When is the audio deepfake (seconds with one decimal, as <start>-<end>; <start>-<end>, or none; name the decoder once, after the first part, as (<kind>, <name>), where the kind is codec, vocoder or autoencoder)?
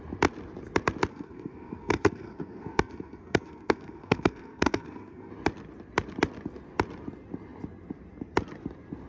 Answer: 1.1-5.3 (codec, SNAC)